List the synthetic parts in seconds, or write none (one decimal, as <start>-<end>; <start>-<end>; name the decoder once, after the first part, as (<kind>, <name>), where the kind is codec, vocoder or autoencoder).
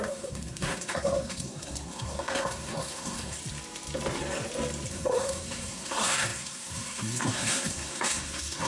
0.0-3.4 (codec, SNAC); 4.9-8.7